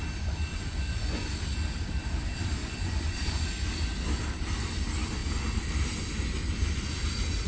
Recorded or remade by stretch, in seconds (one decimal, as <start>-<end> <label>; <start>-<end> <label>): 0.0-0.5 recorded; 0.5-1.3 remade; 1.3-2.6 recorded; 2.6-3.4 remade; 3.4-7.5 recorded

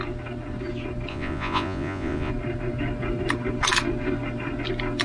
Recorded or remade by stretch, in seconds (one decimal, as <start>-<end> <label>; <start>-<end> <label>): 0.0-1.1 recorded; 1.1-2.3 remade; 2.3-5.0 recorded

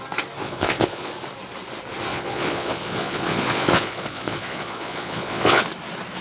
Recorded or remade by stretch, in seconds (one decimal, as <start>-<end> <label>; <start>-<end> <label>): 0.0-0.4 recorded; 0.4-1.1 remade; 1.1-2.1 recorded; 2.1-5.6 remade; 5.6-6.2 recorded

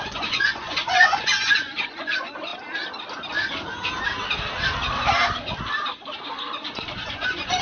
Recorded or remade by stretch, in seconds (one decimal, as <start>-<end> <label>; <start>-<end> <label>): 0.0-2.5 remade; 2.5-7.1 recorded; 7.1-7.6 remade

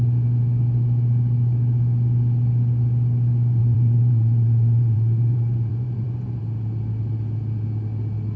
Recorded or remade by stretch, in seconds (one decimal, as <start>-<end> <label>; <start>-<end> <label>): 0.0-3.6 recorded; 3.6-6.4 remade; 6.4-8.4 recorded